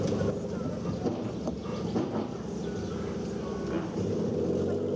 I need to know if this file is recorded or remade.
recorded